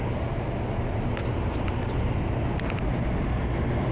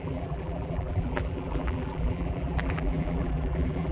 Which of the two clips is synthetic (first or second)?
second